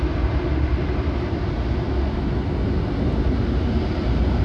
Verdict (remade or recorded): recorded